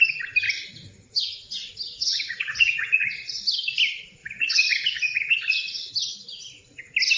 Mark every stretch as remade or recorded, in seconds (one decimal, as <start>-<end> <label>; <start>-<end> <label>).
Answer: 0.0-2.0 recorded; 2.0-3.4 remade; 3.4-4.2 recorded; 4.2-5.9 remade; 5.9-7.2 recorded